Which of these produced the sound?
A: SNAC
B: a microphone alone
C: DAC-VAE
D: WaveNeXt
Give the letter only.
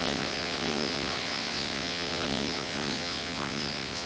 D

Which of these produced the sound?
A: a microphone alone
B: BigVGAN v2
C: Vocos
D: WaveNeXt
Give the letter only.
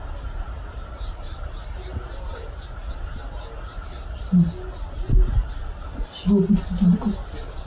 A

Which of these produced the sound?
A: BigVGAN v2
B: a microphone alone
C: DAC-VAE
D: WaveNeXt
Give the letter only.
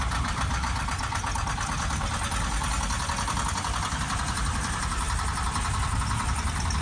B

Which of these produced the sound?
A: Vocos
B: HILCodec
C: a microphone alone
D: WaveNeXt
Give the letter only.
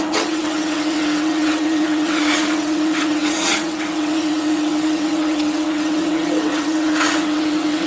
D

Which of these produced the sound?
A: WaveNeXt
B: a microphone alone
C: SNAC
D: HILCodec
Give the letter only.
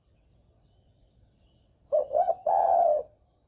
A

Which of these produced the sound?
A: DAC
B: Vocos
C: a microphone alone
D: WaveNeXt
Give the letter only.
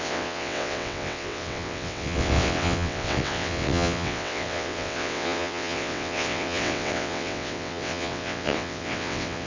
D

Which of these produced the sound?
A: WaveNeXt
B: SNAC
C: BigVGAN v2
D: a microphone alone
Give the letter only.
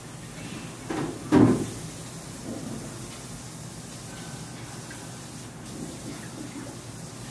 D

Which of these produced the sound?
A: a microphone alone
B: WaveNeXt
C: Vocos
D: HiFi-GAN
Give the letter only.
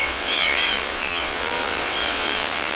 B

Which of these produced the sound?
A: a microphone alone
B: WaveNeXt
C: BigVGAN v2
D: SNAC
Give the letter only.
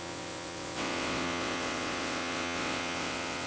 B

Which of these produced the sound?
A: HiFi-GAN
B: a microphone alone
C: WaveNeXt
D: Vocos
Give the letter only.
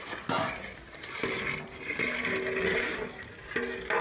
B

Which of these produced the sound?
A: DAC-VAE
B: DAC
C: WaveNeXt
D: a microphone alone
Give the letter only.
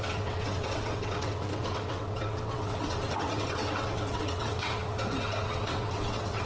C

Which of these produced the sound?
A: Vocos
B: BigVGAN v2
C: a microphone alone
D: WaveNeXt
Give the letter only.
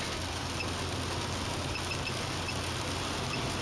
C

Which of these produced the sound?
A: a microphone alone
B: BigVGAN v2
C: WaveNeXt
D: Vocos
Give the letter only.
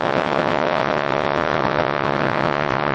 C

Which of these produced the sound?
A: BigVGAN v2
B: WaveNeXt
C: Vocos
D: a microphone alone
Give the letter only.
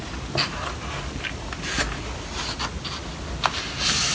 D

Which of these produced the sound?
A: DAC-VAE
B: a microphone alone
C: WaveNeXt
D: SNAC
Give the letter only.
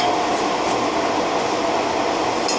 B